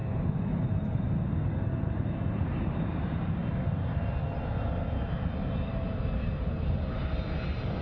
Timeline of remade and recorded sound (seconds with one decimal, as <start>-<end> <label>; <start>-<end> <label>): 0.0-1.9 recorded; 1.9-3.4 remade; 3.4-7.8 recorded